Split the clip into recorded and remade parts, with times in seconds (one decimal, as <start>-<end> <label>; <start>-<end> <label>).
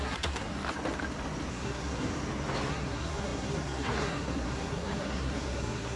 0.0-0.6 remade; 0.6-1.5 recorded; 1.5-2.1 remade; 2.1-2.7 recorded; 2.7-6.0 remade